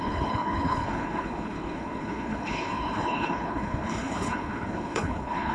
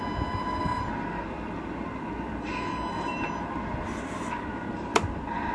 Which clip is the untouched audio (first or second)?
second